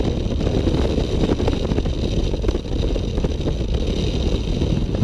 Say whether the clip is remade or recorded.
recorded